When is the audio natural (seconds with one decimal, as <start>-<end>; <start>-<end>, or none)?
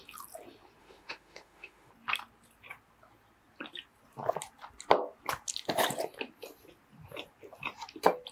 0.0-0.8; 1.9-8.3